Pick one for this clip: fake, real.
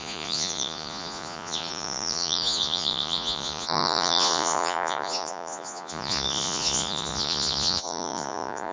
fake